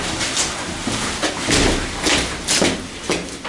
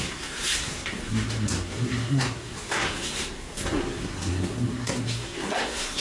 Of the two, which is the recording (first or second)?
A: first